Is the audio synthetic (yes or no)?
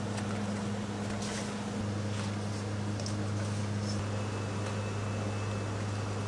no